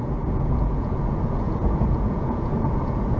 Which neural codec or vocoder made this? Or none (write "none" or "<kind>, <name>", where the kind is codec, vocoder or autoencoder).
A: vocoder, Vocos